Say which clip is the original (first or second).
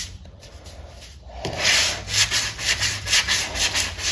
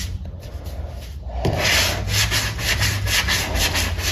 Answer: second